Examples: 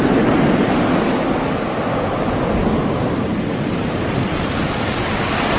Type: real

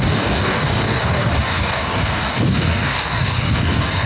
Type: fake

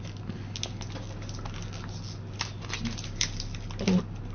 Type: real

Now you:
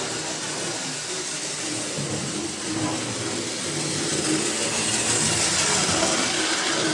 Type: real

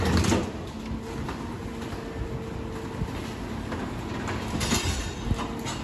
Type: real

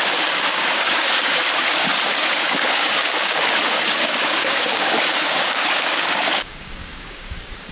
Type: fake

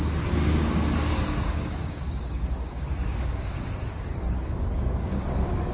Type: fake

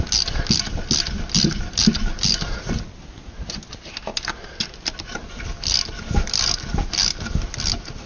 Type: real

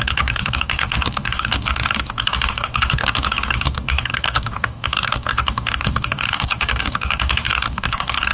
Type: fake